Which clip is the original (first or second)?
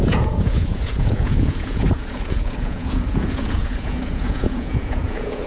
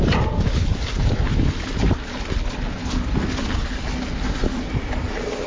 second